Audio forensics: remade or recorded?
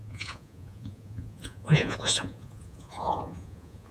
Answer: remade